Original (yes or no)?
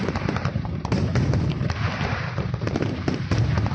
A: no